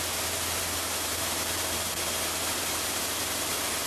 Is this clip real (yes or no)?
yes